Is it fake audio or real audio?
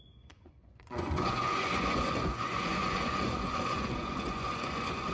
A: fake